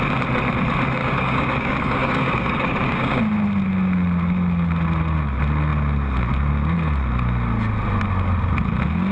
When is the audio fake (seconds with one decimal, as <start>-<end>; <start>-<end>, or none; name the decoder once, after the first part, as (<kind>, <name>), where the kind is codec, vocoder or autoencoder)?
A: 1.0-3.2 (codec, DAC)